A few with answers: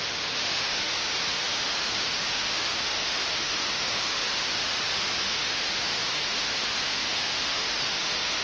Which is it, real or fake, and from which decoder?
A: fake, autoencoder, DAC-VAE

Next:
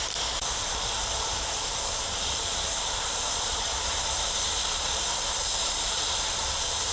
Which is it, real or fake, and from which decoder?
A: fake, vocoder, BigVGAN v2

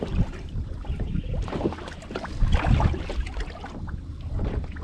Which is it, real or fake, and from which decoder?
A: fake, vocoder, BigVGAN v2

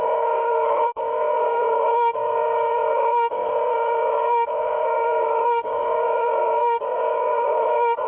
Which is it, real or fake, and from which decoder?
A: fake, codec, SNAC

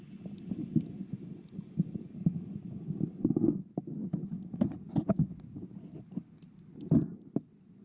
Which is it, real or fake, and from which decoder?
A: real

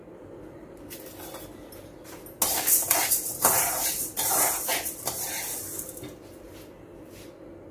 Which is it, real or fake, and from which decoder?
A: real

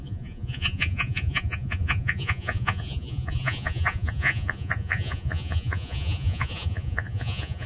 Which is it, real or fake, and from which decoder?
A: fake, vocoder, Vocos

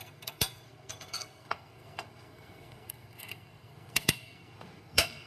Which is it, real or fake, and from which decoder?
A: fake, codec, SNAC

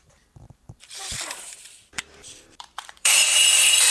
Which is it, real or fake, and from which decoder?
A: fake, vocoder, BigVGAN v2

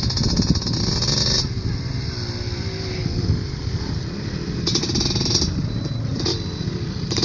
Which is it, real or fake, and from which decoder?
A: real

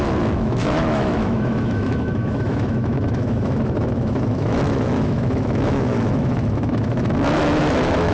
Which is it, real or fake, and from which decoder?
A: fake, autoencoder, DAC-VAE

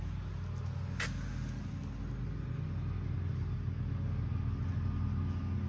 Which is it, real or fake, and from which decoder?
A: real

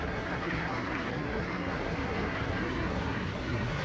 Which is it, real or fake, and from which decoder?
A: fake, codec, SNAC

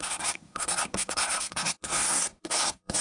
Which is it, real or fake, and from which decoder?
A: fake, codec, SNAC